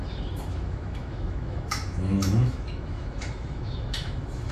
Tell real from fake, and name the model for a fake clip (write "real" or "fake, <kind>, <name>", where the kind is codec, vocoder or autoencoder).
fake, autoencoder, DAC-VAE